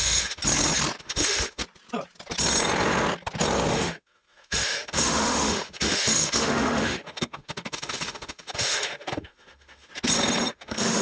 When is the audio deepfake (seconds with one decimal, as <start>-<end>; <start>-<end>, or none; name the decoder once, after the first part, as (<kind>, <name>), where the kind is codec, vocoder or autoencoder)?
0.0-0.4 (autoencoder, DAC-VAE); 1.0-1.6; 3.7-9.9; 10.5-11.0